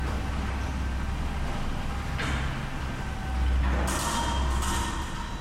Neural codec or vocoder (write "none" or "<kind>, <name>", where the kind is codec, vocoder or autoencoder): none